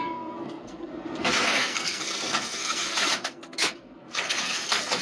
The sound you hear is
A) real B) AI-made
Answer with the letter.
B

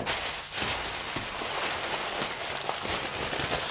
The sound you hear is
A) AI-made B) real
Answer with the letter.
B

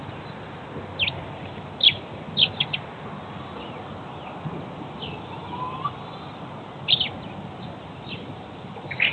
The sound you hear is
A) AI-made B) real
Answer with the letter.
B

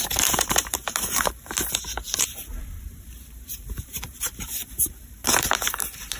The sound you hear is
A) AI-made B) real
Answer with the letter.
A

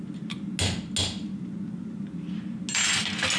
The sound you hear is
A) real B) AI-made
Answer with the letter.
A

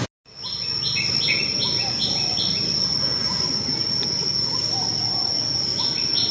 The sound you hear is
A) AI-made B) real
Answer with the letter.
B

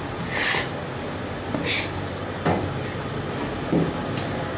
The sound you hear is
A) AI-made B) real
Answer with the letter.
B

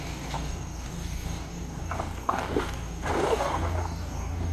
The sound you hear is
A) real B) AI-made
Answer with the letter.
B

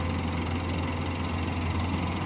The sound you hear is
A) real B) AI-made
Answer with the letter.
A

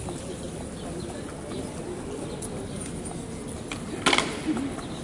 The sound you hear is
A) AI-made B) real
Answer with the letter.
B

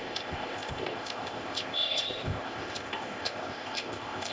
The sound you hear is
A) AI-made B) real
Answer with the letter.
A